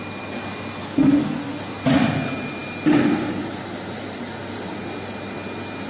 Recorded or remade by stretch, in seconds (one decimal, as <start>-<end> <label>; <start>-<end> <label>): 0.0-0.8 recorded; 0.8-1.6 remade; 1.6-5.9 recorded